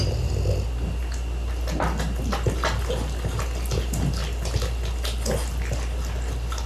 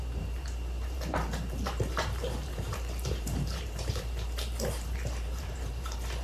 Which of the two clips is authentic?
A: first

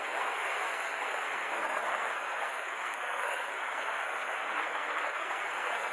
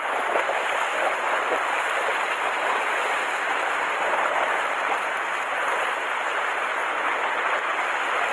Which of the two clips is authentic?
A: second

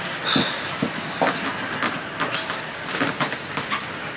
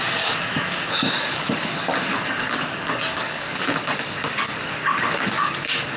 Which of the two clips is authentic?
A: first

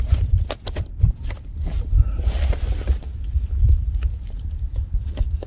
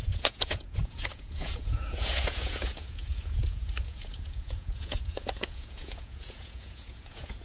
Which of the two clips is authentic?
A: first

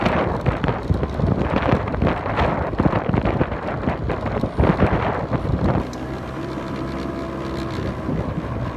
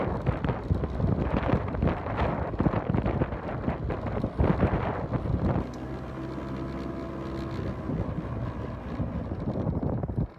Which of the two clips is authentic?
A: second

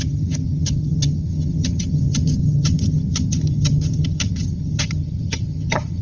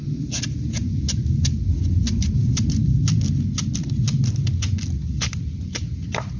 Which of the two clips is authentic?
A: second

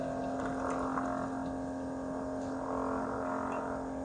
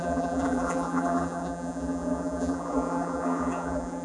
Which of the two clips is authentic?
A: first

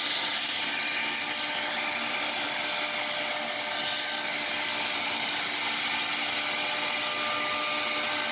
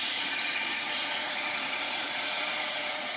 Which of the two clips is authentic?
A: first